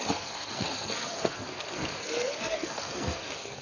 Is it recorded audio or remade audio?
remade